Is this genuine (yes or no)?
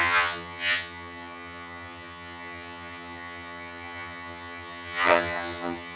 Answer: no